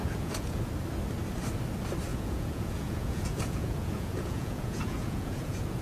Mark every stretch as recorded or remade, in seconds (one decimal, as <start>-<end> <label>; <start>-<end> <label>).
0.0-0.6 remade; 0.6-2.1 recorded; 2.1-5.8 remade